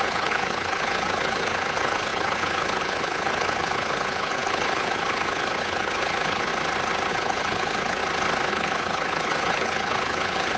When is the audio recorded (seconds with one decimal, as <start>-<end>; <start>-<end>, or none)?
6.5-7.1; 8.0-8.5